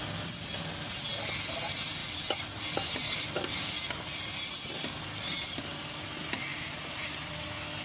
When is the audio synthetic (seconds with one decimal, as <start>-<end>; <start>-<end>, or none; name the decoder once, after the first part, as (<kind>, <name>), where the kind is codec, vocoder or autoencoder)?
6.5-7.3 (vocoder, BigVGAN v2)